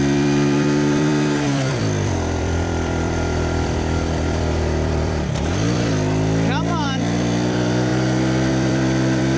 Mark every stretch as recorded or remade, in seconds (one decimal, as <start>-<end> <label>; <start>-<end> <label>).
0.0-7.9 remade; 7.9-8.5 recorded; 8.5-9.4 remade